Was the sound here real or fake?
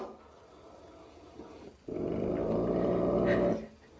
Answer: real